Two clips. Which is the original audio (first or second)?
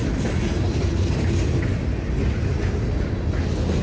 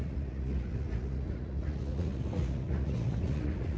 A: first